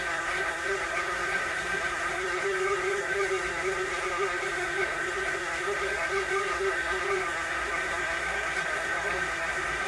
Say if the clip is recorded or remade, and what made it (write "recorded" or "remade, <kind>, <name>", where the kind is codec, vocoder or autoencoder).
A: remade, codec, SNAC